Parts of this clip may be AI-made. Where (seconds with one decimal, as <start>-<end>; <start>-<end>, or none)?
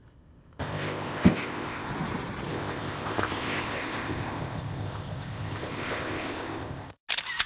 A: 0.0-1.9; 2.5-7.0